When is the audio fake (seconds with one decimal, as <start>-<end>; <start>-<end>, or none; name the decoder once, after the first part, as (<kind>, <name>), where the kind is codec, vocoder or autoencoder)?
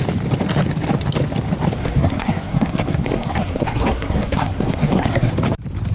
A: 1.8-5.3 (codec, SNAC)